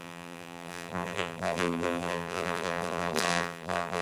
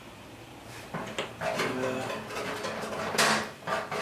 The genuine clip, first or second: second